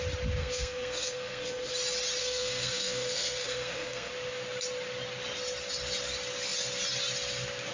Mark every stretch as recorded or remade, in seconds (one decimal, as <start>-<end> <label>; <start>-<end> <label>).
0.0-0.4 recorded; 0.4-1.7 remade; 1.7-2.2 recorded; 2.2-4.1 remade; 4.1-7.7 recorded